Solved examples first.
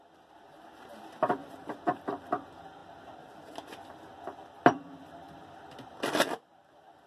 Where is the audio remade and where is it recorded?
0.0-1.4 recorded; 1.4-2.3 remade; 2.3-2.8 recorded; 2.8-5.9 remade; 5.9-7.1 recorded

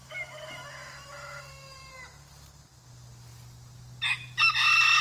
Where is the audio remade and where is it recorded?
0.0-1.9 remade; 1.9-5.0 recorded